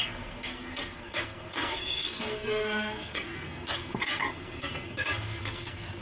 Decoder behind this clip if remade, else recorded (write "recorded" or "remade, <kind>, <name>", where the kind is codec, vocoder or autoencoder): remade, codec, SNAC